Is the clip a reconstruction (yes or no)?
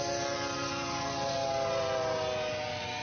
no